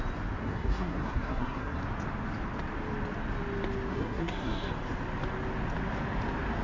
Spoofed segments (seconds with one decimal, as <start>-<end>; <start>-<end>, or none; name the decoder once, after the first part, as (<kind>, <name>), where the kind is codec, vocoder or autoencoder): 0.4-1.8 (codec, SNAC); 3.9-4.7